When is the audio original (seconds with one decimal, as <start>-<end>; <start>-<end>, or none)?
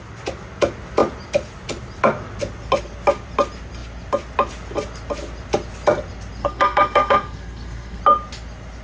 0.0-6.4; 8.0-8.8